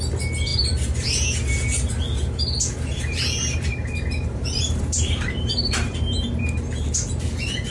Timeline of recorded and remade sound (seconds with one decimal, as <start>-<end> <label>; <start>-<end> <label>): 0.0-2.9 recorded; 2.9-6.9 remade; 6.9-7.7 recorded